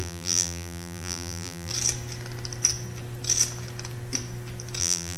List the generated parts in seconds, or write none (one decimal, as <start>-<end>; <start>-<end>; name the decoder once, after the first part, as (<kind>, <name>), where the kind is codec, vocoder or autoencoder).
0.0-1.7 (vocoder, BigVGAN v2); 4.8-5.2